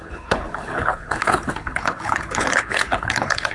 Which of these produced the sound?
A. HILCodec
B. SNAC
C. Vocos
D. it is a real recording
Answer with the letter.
A